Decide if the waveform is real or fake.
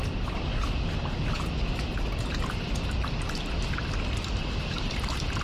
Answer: real